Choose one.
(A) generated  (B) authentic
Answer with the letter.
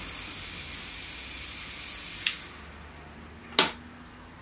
B